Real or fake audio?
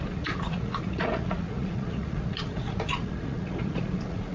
fake